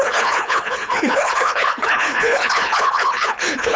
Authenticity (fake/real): fake